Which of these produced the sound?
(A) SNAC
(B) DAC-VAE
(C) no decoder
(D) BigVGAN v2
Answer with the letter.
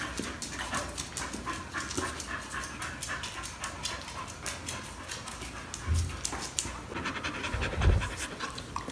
C